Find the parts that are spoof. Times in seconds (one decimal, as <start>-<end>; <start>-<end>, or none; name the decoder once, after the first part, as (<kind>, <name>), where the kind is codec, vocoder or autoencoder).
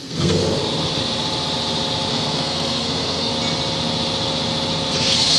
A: 0.0-0.4 (codec, SNAC); 2.1-3.3; 4.9-5.4